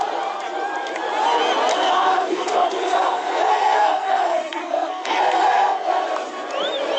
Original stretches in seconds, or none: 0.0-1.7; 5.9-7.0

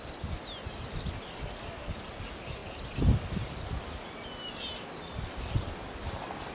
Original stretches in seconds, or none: 0.0-6.5